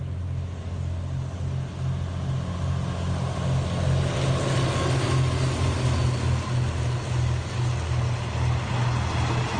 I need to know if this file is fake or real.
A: real